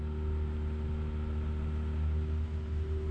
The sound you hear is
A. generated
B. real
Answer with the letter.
B